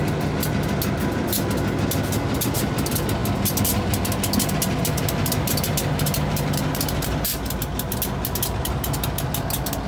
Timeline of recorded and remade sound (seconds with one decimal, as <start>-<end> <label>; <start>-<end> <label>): 0.0-9.9 recorded